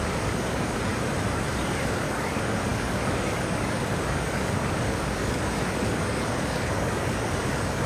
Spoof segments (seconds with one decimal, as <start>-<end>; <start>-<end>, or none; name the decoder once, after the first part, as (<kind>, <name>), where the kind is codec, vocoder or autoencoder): 0.0-0.9 (codec, DAC); 1.5-7.9